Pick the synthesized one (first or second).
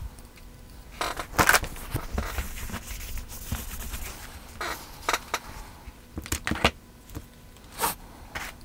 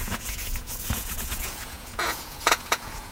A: second